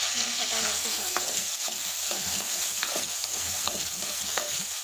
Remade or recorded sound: remade